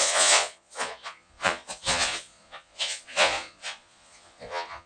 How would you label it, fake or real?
fake